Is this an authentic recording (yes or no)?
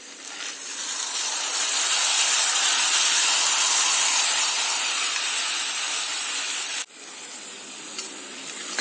no